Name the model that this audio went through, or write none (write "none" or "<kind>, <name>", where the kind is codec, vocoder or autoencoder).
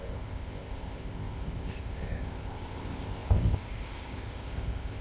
codec, ZipCodec